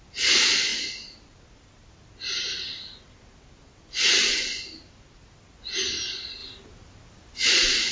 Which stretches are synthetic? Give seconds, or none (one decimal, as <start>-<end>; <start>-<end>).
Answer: none